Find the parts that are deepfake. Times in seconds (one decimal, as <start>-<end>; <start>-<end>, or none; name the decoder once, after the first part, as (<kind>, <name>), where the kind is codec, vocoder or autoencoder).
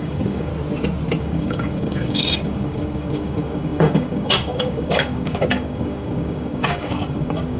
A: 0.0-0.5 (codec, DAC); 1.2-7.6